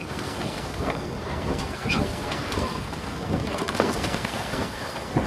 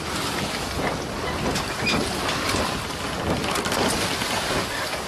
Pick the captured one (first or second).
second